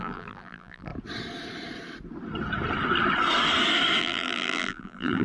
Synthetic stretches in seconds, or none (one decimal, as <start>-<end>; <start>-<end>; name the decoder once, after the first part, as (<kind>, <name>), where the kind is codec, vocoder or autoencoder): 0.0-0.9 (vocoder, BigVGAN v2); 4.0-5.2